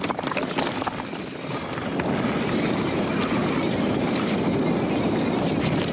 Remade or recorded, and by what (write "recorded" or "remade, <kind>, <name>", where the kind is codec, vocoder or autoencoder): recorded